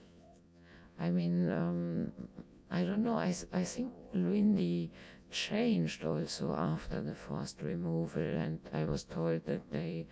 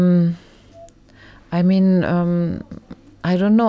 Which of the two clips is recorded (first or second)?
second